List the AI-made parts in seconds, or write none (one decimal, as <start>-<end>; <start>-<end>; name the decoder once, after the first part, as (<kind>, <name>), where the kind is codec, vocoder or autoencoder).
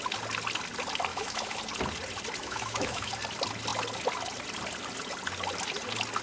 1.1-1.6 (autoencoder, DAC-VAE); 2.4-3.1